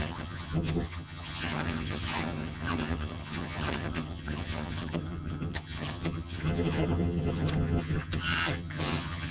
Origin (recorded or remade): remade